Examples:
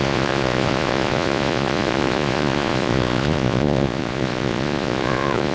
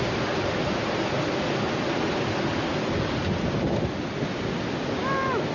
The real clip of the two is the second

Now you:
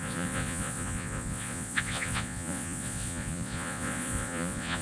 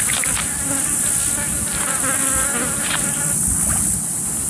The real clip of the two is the second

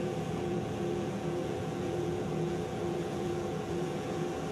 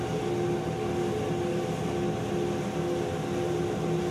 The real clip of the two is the second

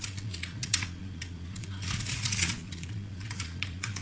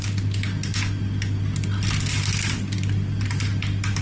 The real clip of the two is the second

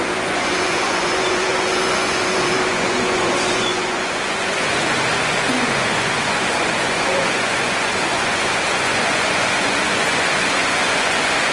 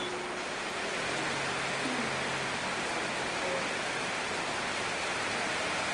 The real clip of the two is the second